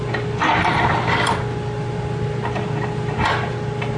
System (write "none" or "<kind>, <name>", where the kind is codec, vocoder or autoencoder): none